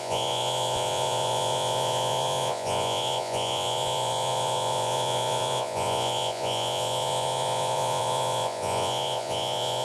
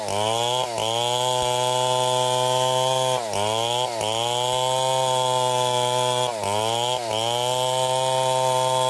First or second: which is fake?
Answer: first